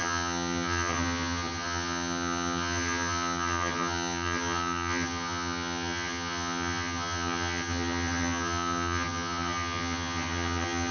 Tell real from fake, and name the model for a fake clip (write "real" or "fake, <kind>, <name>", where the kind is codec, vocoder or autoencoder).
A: fake, vocoder, HiFi-GAN